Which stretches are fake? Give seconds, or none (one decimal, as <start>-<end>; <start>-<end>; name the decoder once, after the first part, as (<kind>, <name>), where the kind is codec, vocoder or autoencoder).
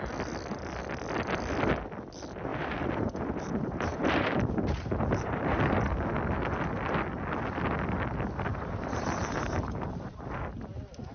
2.5-5.6 (vocoder, BigVGAN v2); 8.5-10.4